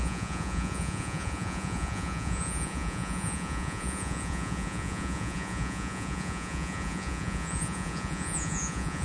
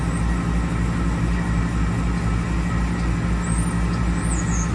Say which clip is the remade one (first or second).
first